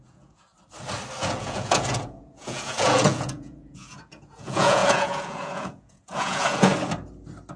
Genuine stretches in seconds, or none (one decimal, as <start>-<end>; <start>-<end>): 0.5-1.2; 6.7-7.6